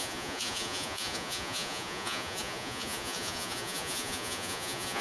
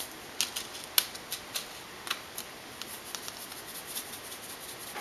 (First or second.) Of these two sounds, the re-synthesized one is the first